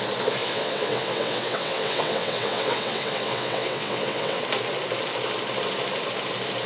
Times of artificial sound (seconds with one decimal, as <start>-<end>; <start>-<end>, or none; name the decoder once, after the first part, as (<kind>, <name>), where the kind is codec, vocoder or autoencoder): 0.4-4.4 (vocoder, WaveNeXt)